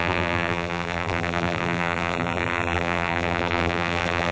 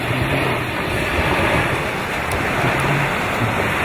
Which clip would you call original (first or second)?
second